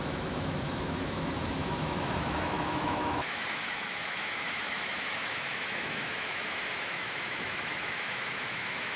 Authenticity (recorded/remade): remade